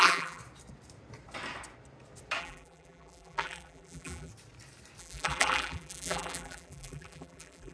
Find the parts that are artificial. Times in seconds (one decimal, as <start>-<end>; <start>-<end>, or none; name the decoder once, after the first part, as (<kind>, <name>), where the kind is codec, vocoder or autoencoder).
0.0-0.4 (vocoder, BigVGAN v2); 2.4-4.3; 5.0-7.7